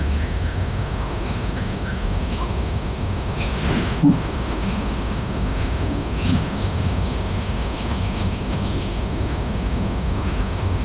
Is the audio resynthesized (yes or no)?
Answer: yes